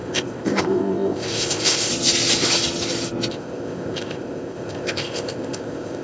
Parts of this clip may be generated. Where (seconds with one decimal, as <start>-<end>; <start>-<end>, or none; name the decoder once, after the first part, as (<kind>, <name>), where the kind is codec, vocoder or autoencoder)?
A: 0.0-1.9 (codec, ZipCodec); 3.3-6.0